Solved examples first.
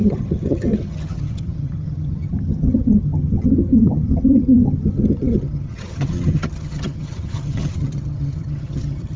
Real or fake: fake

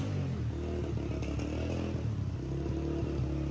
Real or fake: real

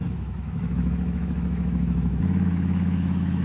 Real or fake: fake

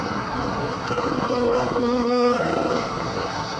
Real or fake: fake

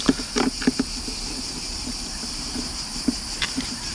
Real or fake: real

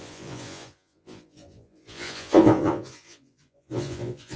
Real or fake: fake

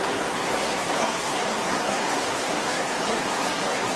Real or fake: fake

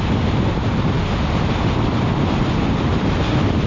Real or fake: real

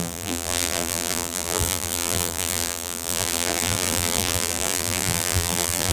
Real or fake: fake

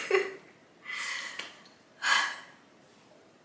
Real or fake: real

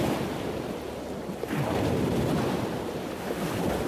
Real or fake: fake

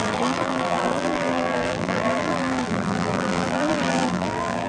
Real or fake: fake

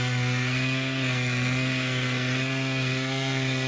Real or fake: fake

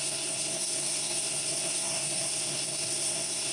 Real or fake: fake